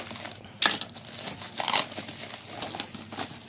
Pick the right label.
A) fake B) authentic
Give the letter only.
B